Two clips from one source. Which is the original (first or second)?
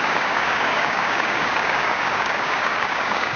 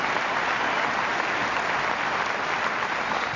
second